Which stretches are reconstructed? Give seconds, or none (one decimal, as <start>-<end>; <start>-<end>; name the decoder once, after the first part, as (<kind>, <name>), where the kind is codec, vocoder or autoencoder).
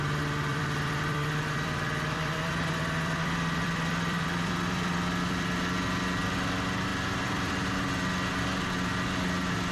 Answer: 0.5-5.6 (vocoder, BigVGAN v2); 6.9-7.8